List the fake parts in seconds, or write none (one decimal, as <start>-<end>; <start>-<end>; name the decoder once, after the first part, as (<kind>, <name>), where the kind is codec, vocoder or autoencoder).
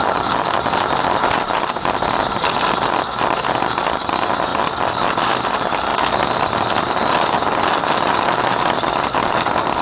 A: none